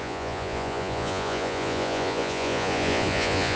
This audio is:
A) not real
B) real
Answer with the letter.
A